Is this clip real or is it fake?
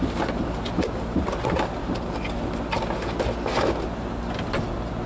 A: real